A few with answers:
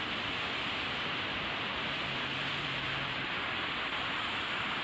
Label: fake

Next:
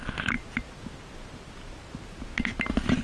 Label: real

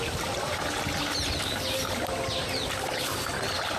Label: real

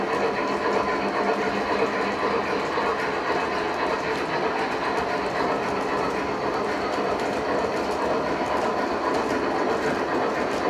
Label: real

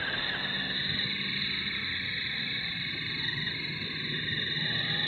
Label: real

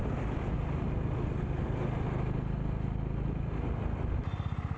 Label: real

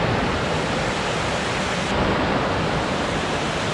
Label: real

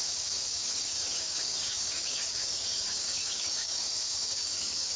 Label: fake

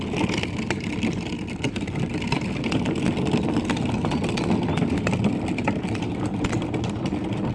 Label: real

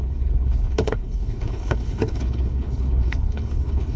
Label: fake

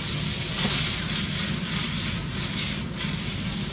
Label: real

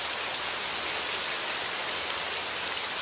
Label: real